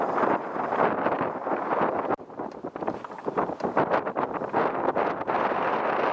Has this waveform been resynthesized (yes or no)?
no